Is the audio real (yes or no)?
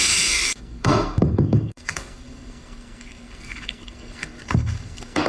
no